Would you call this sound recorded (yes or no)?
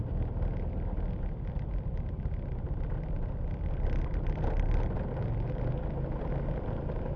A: yes